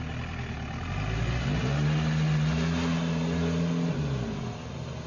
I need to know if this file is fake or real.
real